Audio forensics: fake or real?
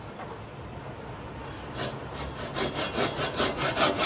real